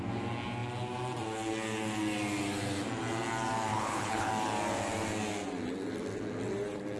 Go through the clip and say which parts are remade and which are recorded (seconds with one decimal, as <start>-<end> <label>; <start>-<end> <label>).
0.0-3.7 recorded; 3.7-4.3 remade; 4.3-7.0 recorded